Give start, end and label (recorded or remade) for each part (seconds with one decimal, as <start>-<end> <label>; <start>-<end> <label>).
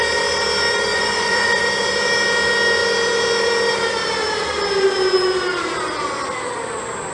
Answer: 0.0-0.9 recorded; 0.9-1.6 remade; 1.6-7.1 recorded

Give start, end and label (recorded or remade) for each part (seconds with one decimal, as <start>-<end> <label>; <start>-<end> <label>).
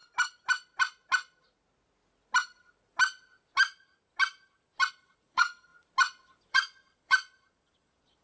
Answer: 0.0-4.9 recorded; 4.9-5.7 remade; 5.7-6.5 recorded; 6.5-8.2 remade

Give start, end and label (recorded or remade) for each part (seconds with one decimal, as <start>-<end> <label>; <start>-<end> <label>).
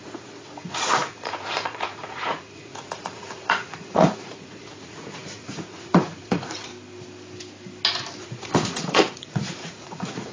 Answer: 0.0-6.7 remade; 6.7-8.2 recorded; 8.2-10.3 remade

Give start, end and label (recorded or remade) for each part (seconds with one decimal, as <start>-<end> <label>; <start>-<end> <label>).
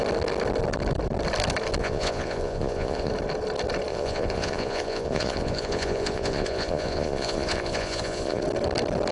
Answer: 0.0-1.8 recorded; 1.8-3.1 remade; 3.1-3.9 recorded; 3.9-8.4 remade; 8.4-9.1 recorded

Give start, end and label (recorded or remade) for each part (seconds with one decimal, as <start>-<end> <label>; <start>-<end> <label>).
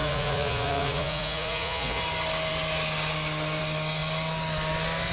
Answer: 0.0-2.0 remade; 2.0-5.1 recorded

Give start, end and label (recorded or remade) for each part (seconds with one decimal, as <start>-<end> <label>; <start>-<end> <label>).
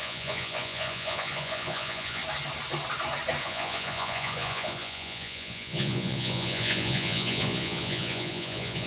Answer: 0.0-2.2 remade; 2.2-3.4 recorded; 3.4-8.9 remade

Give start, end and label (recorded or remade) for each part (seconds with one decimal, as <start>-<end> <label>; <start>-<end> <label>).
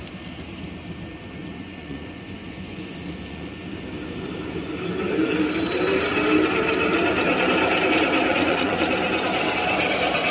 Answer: 0.0-1.4 recorded; 1.4-3.5 remade; 3.5-8.3 recorded; 8.3-8.9 remade; 8.9-10.3 recorded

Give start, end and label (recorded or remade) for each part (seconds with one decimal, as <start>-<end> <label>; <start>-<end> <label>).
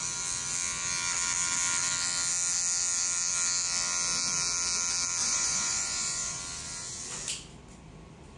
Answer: 0.0-5.2 recorded; 5.2-6.4 remade; 6.4-8.4 recorded